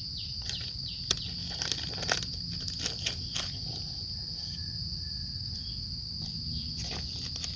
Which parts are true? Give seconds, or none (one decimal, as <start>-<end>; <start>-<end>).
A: 0.0-7.6